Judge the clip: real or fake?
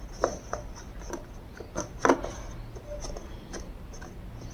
real